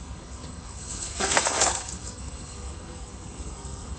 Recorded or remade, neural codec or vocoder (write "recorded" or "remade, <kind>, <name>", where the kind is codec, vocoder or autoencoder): remade, codec, SNAC